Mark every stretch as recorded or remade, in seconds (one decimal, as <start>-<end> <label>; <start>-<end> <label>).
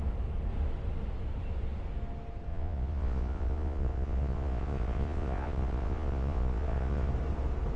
0.0-2.5 recorded; 2.5-7.1 remade; 7.1-7.8 recorded